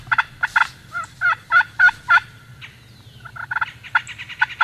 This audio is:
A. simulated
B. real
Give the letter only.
B